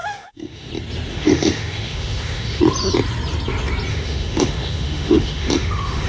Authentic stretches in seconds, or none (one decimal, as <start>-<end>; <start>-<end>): 0.7-1.1; 2.6-3.9